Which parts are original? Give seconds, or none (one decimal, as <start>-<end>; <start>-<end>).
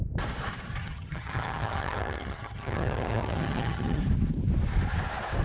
0.0-0.8; 4.0-5.4